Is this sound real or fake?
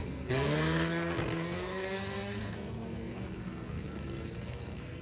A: fake